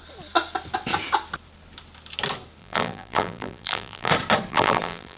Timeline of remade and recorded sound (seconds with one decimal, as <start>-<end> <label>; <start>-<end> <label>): 0.0-2.6 recorded; 2.6-4.1 remade; 4.1-4.5 recorded; 4.5-5.2 remade